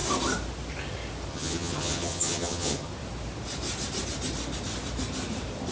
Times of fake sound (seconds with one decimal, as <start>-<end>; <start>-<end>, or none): 1.3-2.9